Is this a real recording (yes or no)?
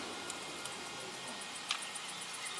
yes